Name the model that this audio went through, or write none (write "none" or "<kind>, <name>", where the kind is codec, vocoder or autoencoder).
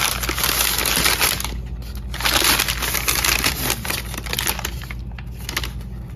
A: none